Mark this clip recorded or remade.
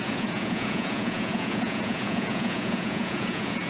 remade